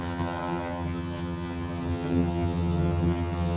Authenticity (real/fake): fake